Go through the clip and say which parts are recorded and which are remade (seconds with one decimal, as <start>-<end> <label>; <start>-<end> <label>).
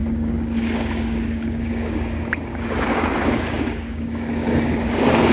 0.0-5.3 remade